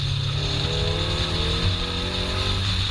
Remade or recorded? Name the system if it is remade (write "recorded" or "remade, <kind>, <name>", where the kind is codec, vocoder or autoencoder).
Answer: recorded